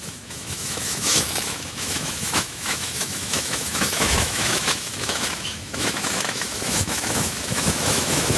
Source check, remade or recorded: remade